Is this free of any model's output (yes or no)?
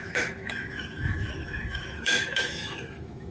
no